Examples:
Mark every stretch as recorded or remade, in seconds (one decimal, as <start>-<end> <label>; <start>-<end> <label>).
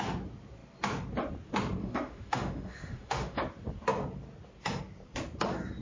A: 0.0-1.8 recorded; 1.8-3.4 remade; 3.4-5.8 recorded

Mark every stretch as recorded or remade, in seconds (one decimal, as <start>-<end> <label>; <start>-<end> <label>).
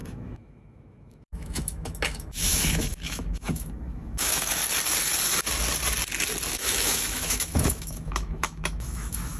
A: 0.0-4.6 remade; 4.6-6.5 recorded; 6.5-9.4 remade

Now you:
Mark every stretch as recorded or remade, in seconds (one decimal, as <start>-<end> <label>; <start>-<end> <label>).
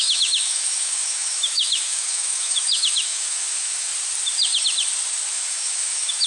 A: 0.0-3.9 remade; 3.9-5.3 recorded; 5.3-6.3 remade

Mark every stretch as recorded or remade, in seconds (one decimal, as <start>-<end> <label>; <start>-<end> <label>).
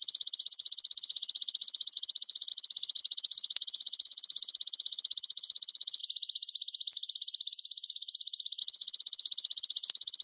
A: 0.0-6.0 remade; 6.0-8.6 recorded; 8.6-10.2 remade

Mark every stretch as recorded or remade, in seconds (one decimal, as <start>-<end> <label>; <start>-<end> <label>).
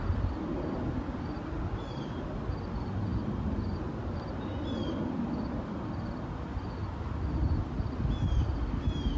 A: 0.0-9.2 recorded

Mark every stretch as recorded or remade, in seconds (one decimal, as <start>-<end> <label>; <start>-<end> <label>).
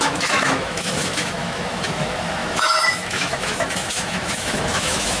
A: 0.0-5.2 remade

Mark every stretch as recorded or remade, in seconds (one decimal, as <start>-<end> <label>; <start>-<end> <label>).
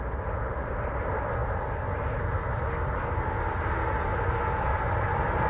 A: 0.0-5.5 recorded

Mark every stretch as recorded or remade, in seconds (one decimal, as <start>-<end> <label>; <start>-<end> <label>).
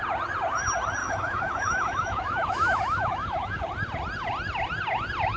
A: 0.0-1.0 recorded; 1.0-3.6 remade; 3.6-5.4 recorded